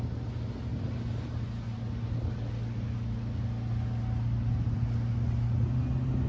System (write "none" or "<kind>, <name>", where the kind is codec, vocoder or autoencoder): none